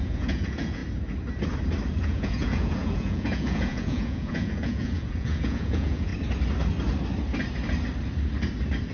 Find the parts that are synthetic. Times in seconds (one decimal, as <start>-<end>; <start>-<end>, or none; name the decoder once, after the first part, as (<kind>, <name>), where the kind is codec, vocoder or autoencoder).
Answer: 0.0-0.8 (vocoder, Vocos); 2.0-6.1